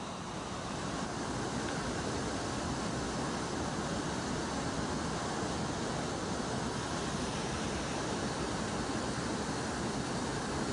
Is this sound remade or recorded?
recorded